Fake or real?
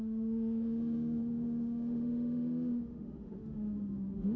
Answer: fake